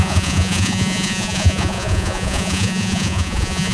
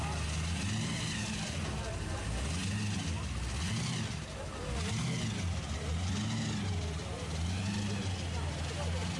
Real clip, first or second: second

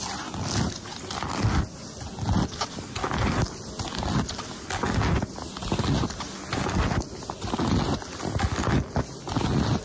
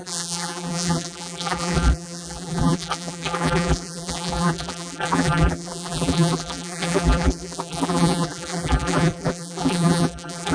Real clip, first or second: first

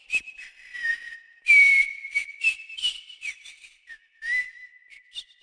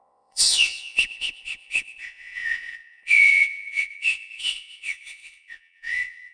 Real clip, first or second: first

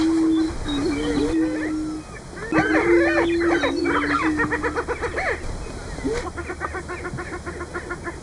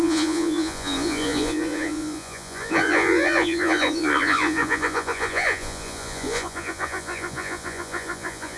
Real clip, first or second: first